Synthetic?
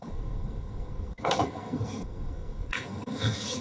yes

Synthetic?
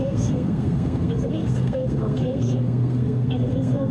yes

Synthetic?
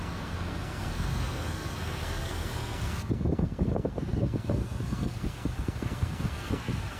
yes